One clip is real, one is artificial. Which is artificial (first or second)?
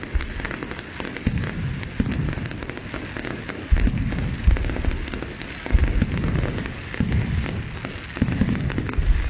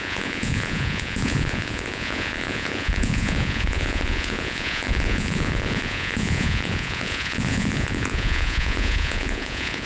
second